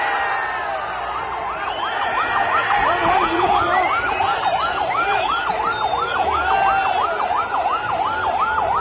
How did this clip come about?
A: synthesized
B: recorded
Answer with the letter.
B